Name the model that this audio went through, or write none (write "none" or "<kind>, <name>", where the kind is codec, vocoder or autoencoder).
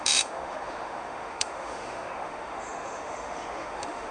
autoencoder, DAC-VAE